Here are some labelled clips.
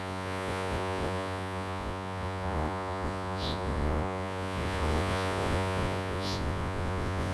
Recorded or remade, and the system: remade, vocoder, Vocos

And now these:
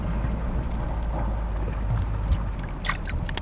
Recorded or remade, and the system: recorded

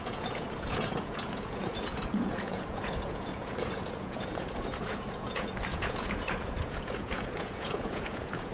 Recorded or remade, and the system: remade, vocoder, Vocos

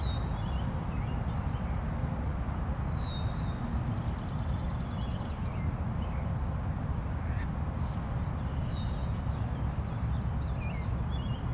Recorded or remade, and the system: recorded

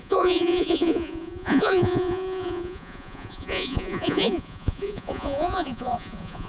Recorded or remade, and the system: remade, vocoder, Vocos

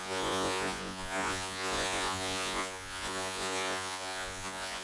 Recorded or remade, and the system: remade, vocoder, Vocos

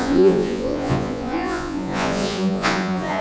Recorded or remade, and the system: remade, vocoder, Vocos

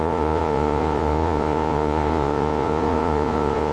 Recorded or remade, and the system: remade, vocoder, Vocos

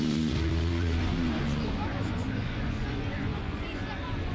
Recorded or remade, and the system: remade, vocoder, Vocos